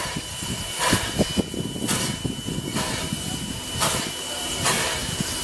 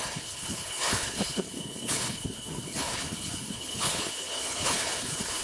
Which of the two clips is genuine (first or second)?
first